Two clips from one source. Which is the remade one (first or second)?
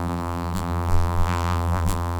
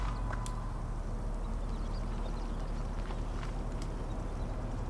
first